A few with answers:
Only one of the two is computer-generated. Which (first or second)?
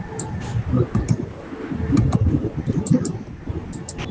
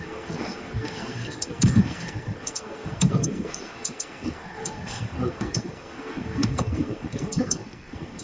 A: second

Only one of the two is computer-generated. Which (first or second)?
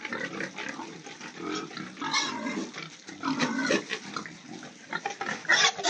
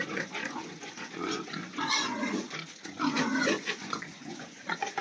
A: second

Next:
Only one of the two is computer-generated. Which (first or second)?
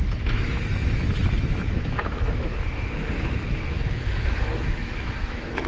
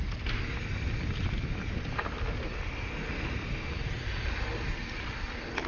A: first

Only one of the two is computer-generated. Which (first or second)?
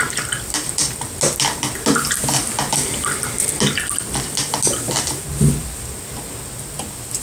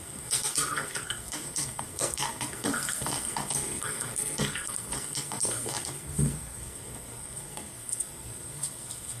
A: second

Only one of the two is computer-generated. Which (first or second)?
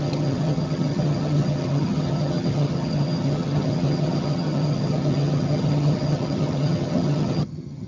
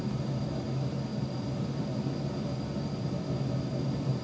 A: first